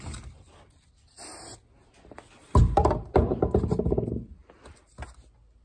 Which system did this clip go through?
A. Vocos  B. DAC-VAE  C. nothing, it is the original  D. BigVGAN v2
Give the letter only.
C